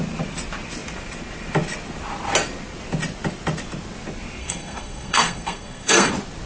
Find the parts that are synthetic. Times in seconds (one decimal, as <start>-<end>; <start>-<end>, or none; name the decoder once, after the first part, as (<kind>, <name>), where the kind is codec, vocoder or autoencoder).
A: 4.4-6.1 (codec, SNAC)